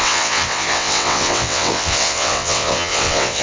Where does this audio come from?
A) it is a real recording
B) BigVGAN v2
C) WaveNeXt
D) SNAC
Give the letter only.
C